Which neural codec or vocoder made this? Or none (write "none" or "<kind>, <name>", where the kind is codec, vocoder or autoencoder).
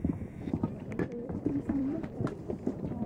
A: vocoder, BigVGAN v2